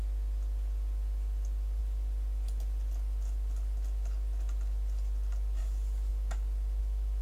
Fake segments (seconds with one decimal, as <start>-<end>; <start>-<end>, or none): none